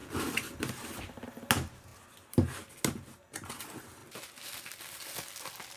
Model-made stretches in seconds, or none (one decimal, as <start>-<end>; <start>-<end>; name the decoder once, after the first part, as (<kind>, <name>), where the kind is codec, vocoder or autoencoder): 0.0-1.5 (vocoder, BigVGAN v2)

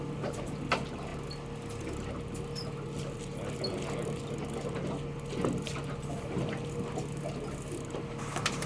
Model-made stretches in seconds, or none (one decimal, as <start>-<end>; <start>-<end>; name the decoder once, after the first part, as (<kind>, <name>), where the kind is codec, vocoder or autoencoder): none

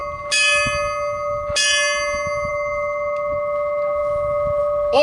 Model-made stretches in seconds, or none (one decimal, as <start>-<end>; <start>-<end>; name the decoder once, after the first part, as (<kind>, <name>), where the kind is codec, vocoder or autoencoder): none

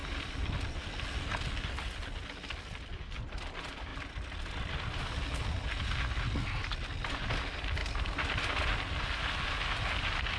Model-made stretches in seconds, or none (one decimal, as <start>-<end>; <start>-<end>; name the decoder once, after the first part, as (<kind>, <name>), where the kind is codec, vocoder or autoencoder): 0.0-0.7 (vocoder, BigVGAN v2); 3.9-5.1; 7.8-9.0